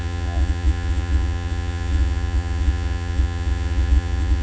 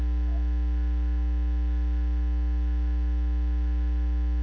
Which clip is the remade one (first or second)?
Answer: first